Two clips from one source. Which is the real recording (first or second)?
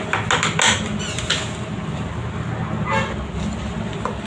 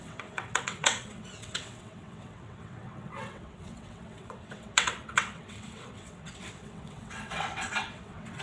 first